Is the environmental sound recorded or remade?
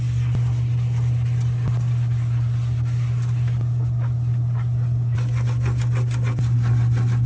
recorded